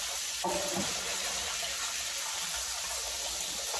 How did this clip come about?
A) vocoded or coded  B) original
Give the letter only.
A